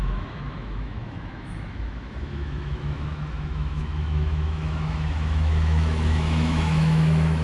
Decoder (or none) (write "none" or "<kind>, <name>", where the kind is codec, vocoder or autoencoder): autoencoder, DAC-VAE